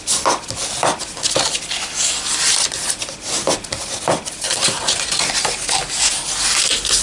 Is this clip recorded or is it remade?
recorded